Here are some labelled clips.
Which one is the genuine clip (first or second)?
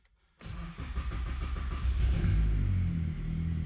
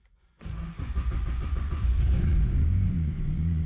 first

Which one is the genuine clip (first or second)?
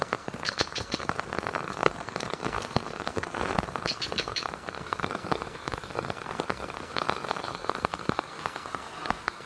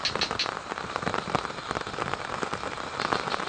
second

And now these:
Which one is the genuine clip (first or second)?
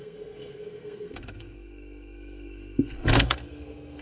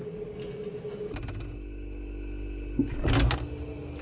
second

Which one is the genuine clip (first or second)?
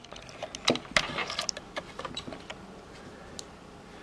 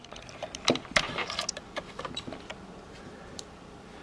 first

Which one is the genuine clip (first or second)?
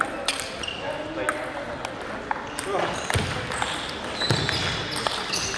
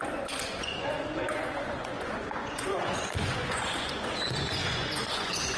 first